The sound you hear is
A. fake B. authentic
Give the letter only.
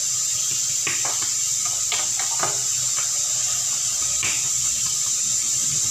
B